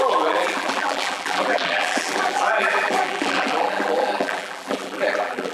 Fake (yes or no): yes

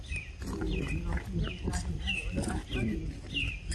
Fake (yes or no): no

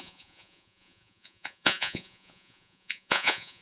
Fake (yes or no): yes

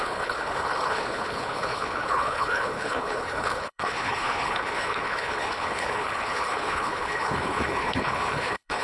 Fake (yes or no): yes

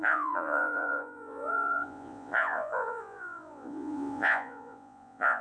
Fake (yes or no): yes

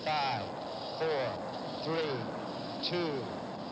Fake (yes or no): no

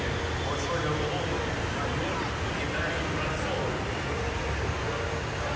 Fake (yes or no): no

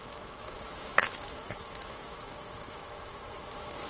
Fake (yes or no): yes